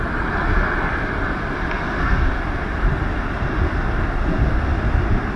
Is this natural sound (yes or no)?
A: yes